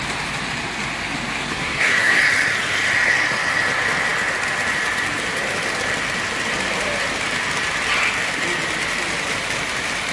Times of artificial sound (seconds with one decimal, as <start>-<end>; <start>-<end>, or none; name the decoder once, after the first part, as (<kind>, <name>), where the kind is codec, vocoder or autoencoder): 1.5-2.2 (codec, SNAC)